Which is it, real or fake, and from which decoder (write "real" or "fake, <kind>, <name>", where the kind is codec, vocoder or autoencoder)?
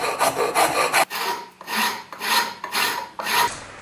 real